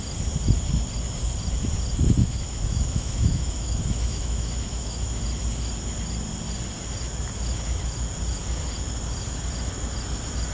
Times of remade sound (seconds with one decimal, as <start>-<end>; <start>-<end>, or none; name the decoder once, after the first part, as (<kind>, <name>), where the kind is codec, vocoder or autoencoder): 2.2-5.2 (autoencoder, DAC-VAE)